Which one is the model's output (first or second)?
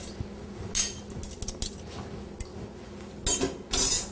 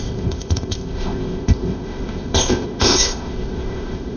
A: second